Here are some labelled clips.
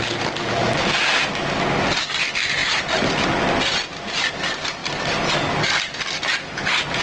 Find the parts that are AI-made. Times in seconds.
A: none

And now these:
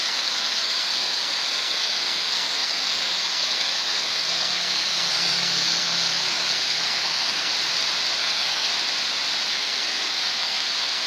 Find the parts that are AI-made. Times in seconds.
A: 0.0-7.5; 8.2-8.7; 9.5-11.1

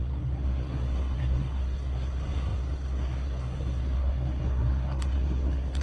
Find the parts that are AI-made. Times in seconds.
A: 0.0-5.8

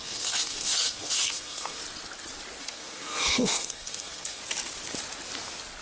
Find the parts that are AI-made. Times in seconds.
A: 0.0-1.8; 2.6-4.4

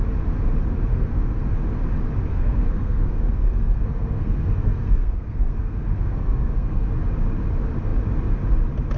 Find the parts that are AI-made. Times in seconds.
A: 0.9-1.5; 2.3-6.9

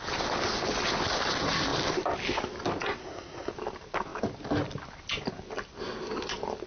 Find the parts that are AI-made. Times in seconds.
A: 3.0-3.5